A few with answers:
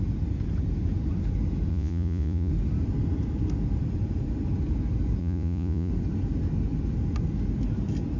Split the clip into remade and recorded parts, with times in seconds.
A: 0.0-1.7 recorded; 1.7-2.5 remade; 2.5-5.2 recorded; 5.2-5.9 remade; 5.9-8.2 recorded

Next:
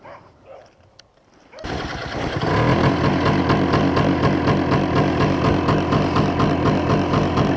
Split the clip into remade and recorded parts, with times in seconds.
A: 0.0-7.6 recorded

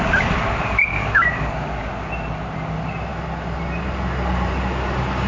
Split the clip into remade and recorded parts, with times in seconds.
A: 0.0-0.9 recorded; 0.9-1.9 remade; 1.9-5.3 recorded